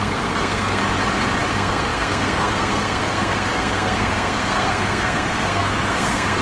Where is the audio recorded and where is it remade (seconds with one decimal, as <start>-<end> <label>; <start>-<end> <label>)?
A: 0.0-0.8 remade; 0.8-1.5 recorded; 1.5-6.4 remade